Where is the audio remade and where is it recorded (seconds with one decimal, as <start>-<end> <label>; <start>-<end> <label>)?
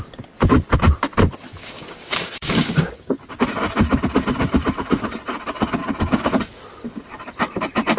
0.0-1.6 recorded; 1.6-3.1 remade; 3.1-5.8 recorded; 5.8-6.3 remade; 6.3-8.0 recorded